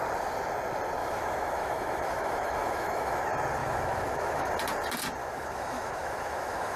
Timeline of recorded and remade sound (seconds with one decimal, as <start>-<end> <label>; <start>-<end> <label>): 0.0-1.0 recorded; 1.0-3.2 remade; 3.2-3.6 recorded; 3.6-4.5 remade; 4.5-5.2 recorded; 5.2-6.8 remade